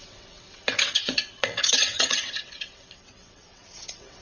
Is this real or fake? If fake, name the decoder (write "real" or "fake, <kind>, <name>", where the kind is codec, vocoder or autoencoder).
fake, vocoder, WaveNeXt